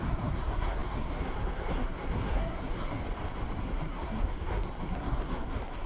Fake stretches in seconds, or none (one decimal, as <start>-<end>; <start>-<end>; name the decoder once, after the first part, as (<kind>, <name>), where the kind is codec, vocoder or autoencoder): 0.0-3.0 (codec, SNAC); 3.6-5.9